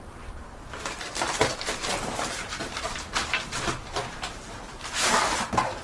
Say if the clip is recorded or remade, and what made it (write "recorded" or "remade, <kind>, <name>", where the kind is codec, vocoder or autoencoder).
remade, vocoder, BigVGAN v2